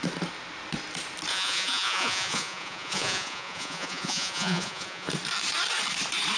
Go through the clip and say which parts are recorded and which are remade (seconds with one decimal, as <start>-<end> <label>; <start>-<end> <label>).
0.0-1.3 recorded; 1.3-5.1 remade; 5.1-6.4 recorded